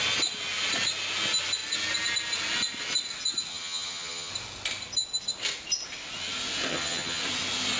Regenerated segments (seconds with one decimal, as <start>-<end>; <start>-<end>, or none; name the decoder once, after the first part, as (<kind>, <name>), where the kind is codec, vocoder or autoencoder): 3.5-4.3 (vocoder, HiFi-GAN); 6.7-7.2